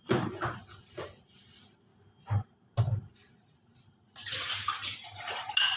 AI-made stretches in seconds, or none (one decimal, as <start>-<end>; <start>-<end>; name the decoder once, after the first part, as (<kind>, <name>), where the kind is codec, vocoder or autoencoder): 0.0-1.9 (vocoder, BigVGAN v2); 2.8-5.8